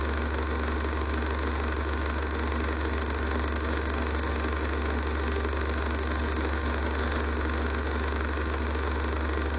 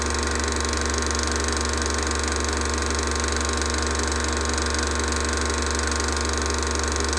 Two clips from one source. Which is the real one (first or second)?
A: second